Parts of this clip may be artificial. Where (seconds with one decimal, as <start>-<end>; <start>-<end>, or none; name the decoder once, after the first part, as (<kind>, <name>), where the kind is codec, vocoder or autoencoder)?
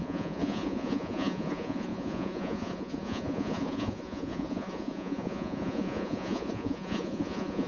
0.0-7.7 (vocoder, Vocos)